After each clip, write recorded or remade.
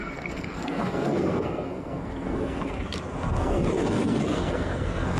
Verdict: remade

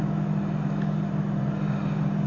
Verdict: recorded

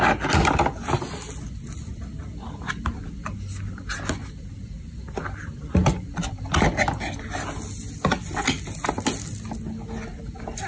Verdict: recorded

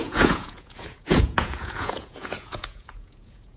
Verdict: remade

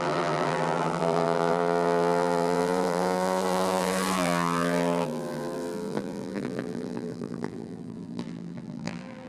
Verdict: remade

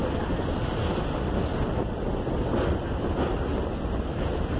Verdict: recorded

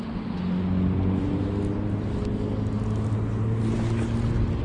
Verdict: recorded